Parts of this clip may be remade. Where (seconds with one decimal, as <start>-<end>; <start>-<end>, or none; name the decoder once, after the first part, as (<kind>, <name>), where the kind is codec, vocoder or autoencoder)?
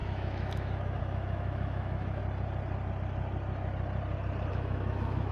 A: 0.0-2.2 (autoencoder, DAC-VAE); 4.5-5.3